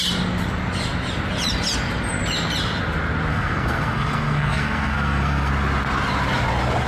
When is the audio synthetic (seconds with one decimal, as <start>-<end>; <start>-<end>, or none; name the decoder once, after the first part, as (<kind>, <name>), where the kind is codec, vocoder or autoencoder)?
3.3-5.5 (codec, SNAC)